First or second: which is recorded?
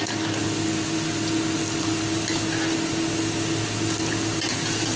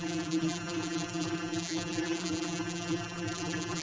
first